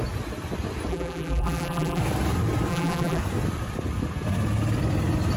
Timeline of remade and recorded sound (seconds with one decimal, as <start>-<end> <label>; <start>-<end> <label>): 0.0-0.9 recorded; 0.9-2.0 remade; 2.0-2.7 recorded; 2.7-3.2 remade; 3.2-5.4 recorded